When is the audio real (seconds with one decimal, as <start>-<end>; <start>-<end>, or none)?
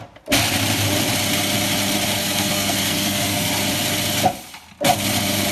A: 0.0-2.2; 3.5-5.5